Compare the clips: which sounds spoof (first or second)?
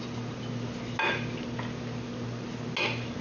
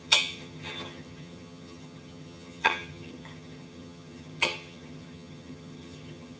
second